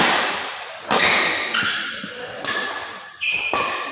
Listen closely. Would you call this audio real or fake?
fake